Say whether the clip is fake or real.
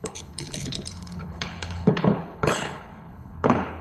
fake